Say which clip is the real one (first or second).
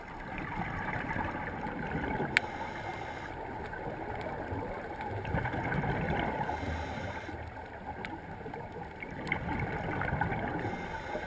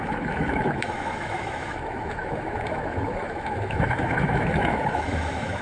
first